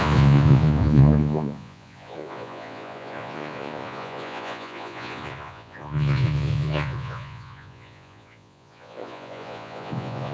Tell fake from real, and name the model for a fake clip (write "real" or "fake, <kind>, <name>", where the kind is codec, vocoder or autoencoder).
fake, vocoder, Vocos